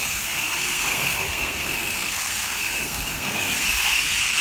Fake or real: fake